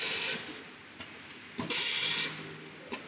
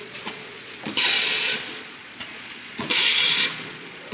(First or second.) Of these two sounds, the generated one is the second